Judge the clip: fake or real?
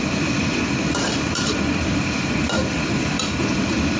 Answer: fake